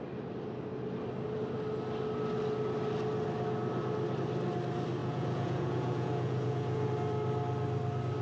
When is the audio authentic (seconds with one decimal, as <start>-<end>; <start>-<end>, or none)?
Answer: 0.0-5.0; 6.9-8.2